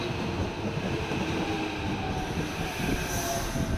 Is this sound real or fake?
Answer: real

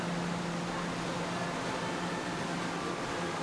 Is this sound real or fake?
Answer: real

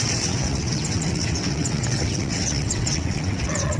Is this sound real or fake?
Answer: fake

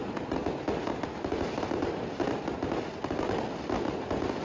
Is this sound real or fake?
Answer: real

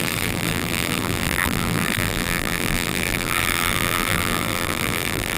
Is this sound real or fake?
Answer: fake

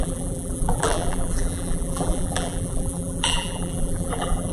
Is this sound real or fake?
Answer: fake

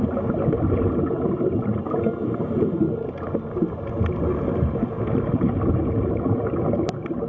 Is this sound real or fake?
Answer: real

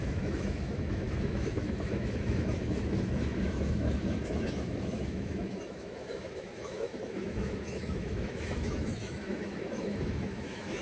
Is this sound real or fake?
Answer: fake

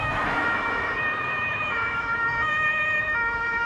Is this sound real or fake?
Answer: fake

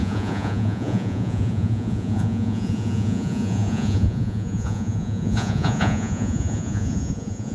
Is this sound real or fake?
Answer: fake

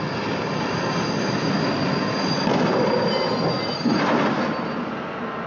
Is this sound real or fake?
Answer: real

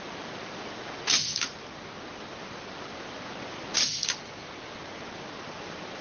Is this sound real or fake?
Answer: real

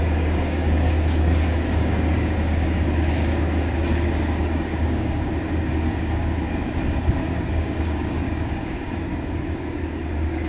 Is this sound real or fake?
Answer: fake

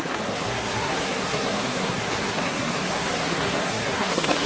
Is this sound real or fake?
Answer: fake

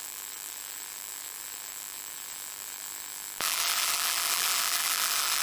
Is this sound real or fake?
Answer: fake